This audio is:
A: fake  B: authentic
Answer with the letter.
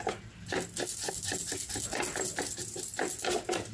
B